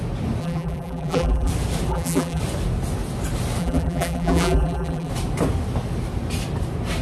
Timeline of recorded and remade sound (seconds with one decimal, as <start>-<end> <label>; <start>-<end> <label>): 0.0-0.4 recorded; 0.4-1.5 remade; 1.5-1.9 recorded; 1.9-2.4 remade; 2.4-3.6 recorded; 3.6-5.1 remade; 5.1-7.0 recorded

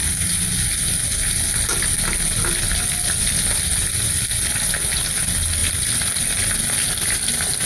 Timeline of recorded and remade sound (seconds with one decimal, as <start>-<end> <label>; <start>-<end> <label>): 0.0-7.7 recorded

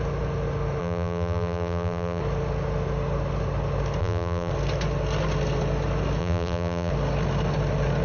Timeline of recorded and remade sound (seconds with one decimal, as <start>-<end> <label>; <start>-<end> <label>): 0.0-0.8 recorded; 0.8-2.2 remade; 2.2-4.0 recorded; 4.0-4.5 remade; 4.5-6.2 recorded; 6.2-6.9 remade; 6.9-8.0 recorded

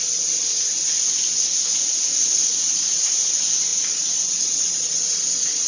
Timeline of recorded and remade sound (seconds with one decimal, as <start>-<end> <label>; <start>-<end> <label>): 0.0-3.7 recorded; 3.7-4.4 remade; 4.4-5.7 recorded

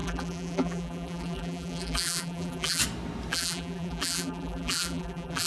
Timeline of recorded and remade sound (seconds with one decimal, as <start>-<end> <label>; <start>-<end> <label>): 0.0-2.8 remade; 2.8-3.3 recorded; 3.3-5.5 remade

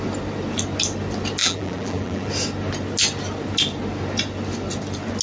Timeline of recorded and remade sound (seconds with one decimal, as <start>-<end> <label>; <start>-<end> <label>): 0.0-1.4 recorded; 1.4-2.3 remade; 2.3-5.2 recorded

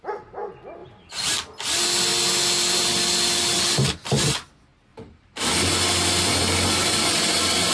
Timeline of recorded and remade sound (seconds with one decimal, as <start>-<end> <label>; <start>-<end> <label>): 0.0-0.8 recorded; 0.8-1.3 remade; 1.3-4.9 recorded; 4.9-5.5 remade; 5.5-7.7 recorded

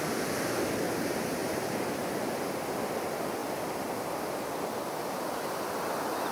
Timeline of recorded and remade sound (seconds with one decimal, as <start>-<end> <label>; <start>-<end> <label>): 0.0-1.4 recorded; 1.4-2.1 remade; 2.1-6.3 recorded